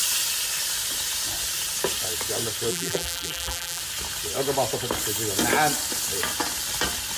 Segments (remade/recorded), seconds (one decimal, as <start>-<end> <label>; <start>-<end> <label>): 0.0-2.7 recorded; 2.7-3.8 remade; 3.8-7.2 recorded